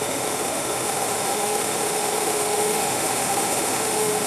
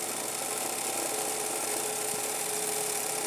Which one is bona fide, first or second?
second